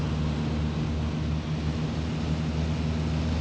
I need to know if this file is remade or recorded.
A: recorded